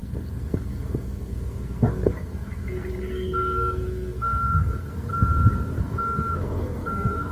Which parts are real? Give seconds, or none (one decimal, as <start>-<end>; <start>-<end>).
5.1-5.8